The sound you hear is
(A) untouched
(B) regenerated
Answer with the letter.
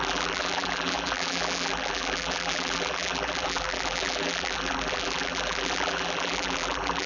B